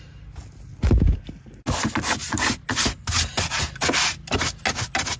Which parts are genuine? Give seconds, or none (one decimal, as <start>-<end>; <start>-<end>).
0.0-5.2